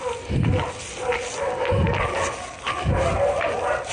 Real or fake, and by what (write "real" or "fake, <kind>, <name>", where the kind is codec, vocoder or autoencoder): real